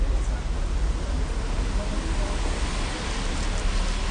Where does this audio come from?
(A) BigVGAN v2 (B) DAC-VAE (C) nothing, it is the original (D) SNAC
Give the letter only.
C